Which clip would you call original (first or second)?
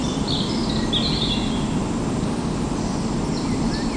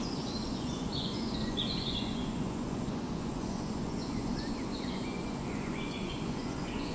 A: first